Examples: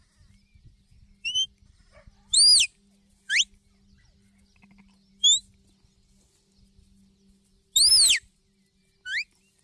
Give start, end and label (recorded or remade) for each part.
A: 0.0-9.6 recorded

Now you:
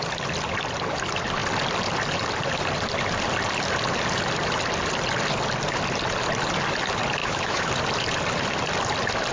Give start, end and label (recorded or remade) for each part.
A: 0.0-7.2 recorded; 7.2-7.7 remade; 7.7-9.3 recorded

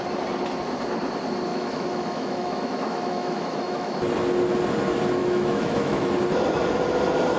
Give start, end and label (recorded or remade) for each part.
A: 0.0-1.5 recorded; 1.5-4.0 remade; 4.0-5.2 recorded; 5.2-6.1 remade; 6.1-7.4 recorded

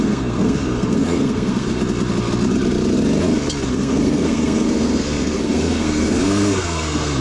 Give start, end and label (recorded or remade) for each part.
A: 0.0-1.8 remade; 1.8-3.7 recorded; 3.7-7.2 remade

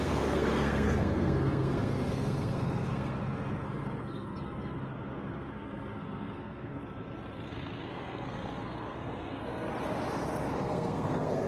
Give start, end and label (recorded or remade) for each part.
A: 0.0-6.8 remade; 6.8-7.5 recorded; 7.5-9.7 remade; 9.7-10.6 recorded; 10.6-11.5 remade